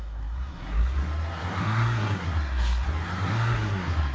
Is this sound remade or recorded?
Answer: remade